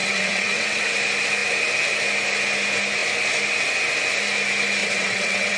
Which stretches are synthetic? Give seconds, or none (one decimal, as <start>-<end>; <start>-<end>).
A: 0.0-0.8; 4.8-5.6